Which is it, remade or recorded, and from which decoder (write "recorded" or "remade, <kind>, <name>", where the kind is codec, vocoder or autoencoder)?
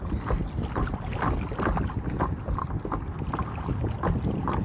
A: recorded